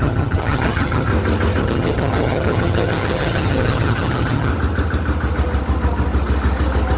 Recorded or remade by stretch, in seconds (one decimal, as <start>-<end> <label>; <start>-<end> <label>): 0.0-1.1 remade; 1.1-1.6 recorded; 1.6-4.5 remade; 4.5-7.0 recorded